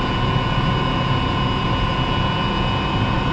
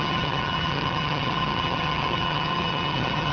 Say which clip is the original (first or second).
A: first